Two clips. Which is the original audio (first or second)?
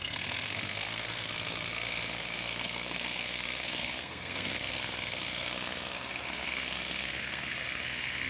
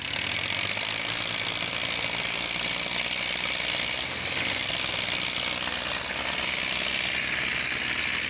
second